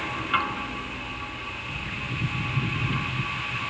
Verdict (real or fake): real